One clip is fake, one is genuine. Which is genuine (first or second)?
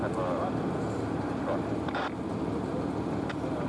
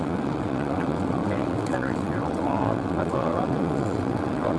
first